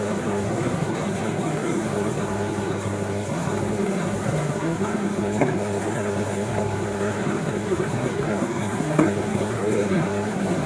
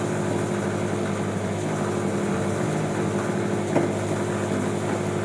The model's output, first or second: first